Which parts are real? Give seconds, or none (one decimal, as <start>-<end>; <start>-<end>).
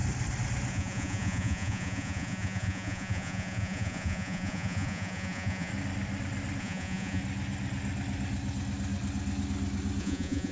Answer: 0.0-0.7; 5.7-6.6; 7.2-10.0